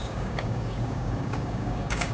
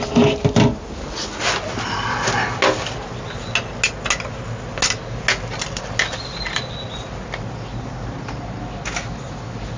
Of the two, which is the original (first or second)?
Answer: second